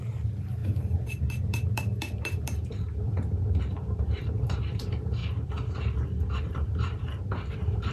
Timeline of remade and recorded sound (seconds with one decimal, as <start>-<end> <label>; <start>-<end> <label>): 0.0-5.2 remade; 5.2-6.4 recorded; 6.4-7.9 remade